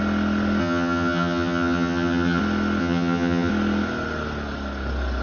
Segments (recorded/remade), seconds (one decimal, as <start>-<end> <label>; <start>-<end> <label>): 0.0-0.6 recorded; 0.6-2.4 remade; 2.4-2.8 recorded; 2.8-3.5 remade; 3.5-5.2 recorded

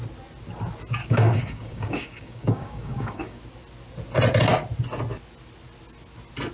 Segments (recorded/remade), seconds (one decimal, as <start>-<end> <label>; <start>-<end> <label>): 0.0-1.0 recorded; 1.0-3.4 remade; 3.4-6.5 recorded

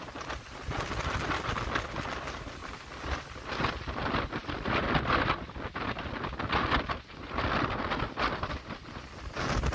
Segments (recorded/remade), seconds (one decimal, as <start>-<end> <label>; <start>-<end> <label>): 0.0-4.4 recorded; 4.4-5.3 remade; 5.3-9.7 recorded

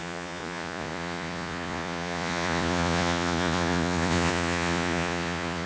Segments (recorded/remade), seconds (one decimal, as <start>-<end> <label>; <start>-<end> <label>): 0.0-5.7 remade

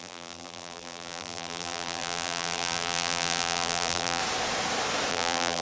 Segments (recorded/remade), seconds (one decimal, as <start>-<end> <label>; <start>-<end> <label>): 0.0-4.2 remade; 4.2-5.1 recorded; 5.1-5.6 remade

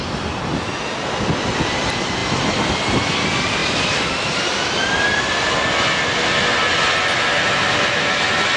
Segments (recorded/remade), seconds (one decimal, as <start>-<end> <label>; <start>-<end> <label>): 0.0-8.6 recorded